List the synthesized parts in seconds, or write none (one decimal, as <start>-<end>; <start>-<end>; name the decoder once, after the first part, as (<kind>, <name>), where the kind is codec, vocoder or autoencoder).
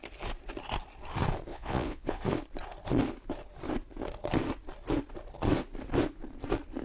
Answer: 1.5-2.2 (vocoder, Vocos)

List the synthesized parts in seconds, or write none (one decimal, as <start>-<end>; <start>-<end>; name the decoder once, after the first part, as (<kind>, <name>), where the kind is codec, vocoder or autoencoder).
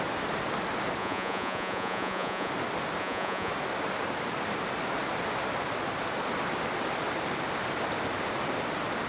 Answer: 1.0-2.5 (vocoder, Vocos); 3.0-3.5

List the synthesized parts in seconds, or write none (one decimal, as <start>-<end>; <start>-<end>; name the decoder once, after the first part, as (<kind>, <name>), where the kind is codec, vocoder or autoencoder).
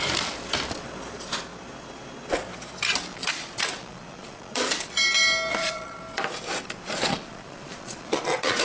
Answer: 3.1-4.9 (vocoder, Vocos); 5.5-6.0; 7.1-8.6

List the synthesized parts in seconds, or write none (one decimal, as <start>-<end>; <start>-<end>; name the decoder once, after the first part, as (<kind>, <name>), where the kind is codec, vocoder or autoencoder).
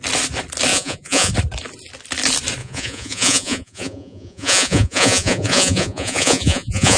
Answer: 0.7-1.3 (vocoder, Vocos); 2.6-7.0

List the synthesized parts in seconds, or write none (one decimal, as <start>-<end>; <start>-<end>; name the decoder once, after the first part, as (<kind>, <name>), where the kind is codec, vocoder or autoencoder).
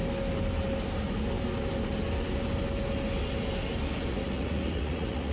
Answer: 4.1-5.3 (vocoder, Vocos)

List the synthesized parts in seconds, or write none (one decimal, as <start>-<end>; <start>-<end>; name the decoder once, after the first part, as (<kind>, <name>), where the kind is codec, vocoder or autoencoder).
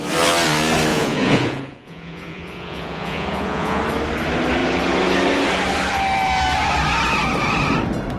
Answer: 0.9-3.8 (vocoder, Vocos)